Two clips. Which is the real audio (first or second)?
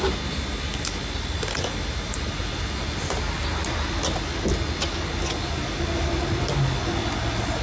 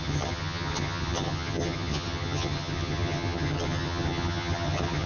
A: first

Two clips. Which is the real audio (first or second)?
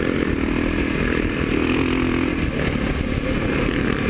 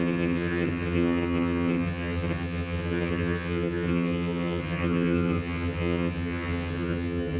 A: first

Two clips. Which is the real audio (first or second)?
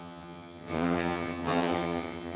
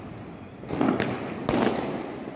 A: second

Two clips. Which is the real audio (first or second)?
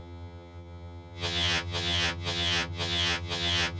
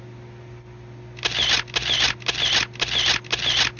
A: second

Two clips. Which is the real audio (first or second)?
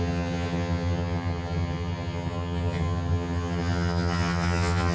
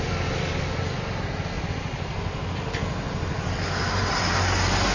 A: second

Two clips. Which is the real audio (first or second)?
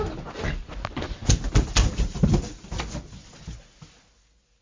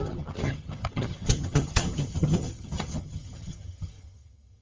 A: first